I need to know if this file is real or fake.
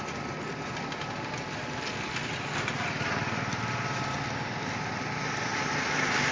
real